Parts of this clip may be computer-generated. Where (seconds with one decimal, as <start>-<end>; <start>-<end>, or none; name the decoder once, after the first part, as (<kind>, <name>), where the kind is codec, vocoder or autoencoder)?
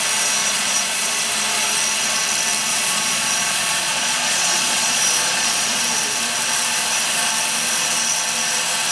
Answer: 0.4-1.1 (vocoder, Vocos); 2.7-5.8